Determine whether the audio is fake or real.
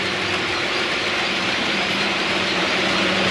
fake